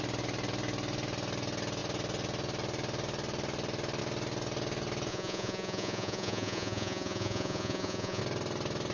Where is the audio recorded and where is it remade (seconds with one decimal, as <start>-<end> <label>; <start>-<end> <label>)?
0.0-5.1 recorded; 5.1-8.2 remade; 8.2-8.9 recorded